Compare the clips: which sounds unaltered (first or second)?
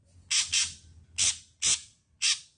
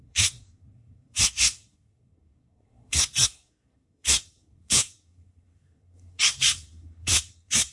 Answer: first